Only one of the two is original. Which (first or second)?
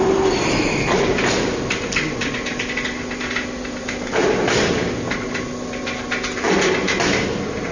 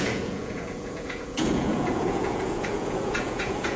first